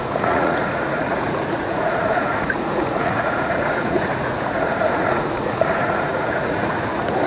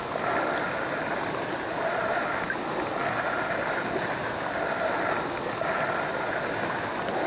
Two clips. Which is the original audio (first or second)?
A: second